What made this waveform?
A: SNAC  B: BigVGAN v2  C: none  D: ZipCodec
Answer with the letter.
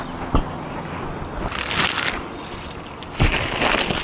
C